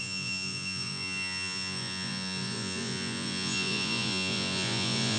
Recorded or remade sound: remade